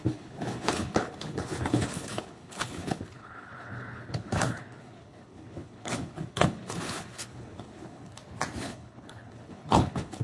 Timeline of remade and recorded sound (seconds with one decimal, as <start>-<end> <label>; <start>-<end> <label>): 0.0-8.1 remade; 8.1-8.6 recorded; 8.6-10.2 remade